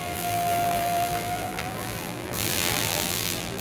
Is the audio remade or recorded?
remade